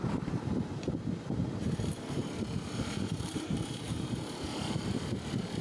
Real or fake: fake